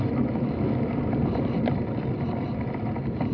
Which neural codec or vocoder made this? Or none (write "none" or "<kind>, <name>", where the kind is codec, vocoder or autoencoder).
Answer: none